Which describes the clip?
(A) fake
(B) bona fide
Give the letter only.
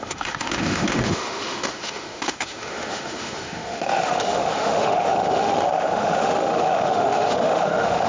A